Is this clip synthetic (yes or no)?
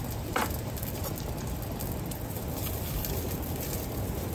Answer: no